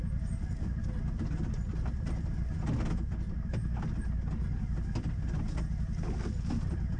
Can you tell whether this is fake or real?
real